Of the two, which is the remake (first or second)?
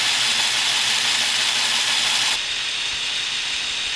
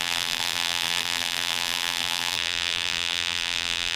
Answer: second